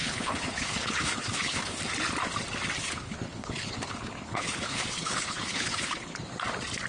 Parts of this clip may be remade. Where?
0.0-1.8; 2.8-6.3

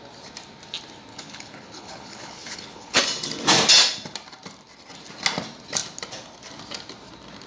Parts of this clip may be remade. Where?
1.1-3.0